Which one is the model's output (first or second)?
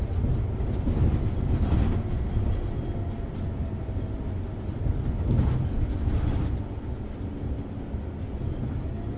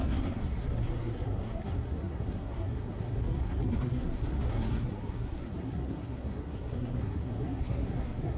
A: second